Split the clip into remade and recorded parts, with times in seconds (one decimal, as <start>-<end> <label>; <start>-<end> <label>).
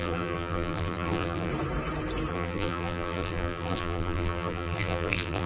0.0-1.5 remade; 1.5-2.3 recorded; 2.3-5.5 remade